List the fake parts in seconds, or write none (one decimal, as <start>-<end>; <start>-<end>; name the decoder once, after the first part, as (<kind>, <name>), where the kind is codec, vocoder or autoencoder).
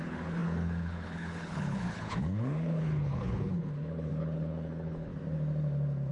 0.0-5.1 (codec, HILCodec)